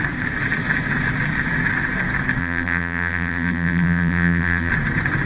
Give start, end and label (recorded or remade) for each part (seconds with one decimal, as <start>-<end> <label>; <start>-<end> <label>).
0.0-2.4 recorded; 2.4-4.7 remade; 4.7-5.3 recorded